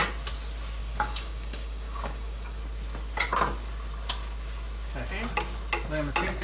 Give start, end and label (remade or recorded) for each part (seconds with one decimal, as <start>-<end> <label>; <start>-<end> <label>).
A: 0.0-0.8 recorded; 0.8-2.6 remade; 2.6-6.4 recorded